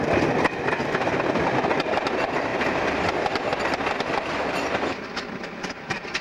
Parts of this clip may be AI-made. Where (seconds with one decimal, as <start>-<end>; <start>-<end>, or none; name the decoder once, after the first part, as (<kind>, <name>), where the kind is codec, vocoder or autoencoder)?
2.5-4.5 (vocoder, BigVGAN v2)